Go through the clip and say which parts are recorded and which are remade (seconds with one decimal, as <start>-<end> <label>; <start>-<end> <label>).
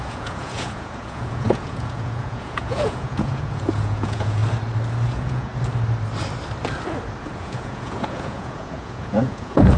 0.0-4.4 remade; 4.4-5.1 recorded; 5.1-5.5 remade; 5.5-7.2 recorded; 7.2-9.8 remade